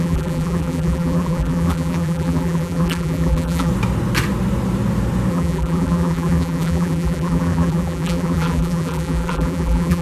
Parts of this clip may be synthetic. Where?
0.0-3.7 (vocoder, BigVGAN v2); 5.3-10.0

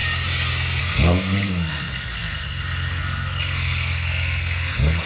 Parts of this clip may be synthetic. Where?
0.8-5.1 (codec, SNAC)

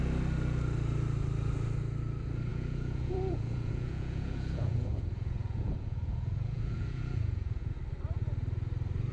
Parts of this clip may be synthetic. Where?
2.5-7.7 (vocoder, Vocos)

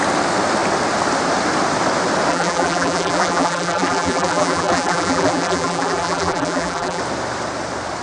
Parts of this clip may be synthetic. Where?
2.3-7.0 (vocoder, BigVGAN v2)